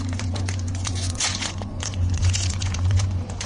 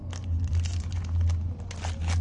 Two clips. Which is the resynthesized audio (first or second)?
first